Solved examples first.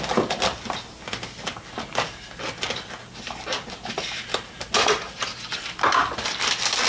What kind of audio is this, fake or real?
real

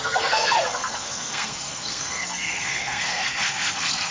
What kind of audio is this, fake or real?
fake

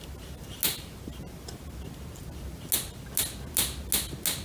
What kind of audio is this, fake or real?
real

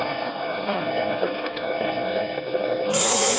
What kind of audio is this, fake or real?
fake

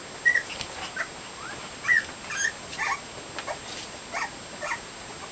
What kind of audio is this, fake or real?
real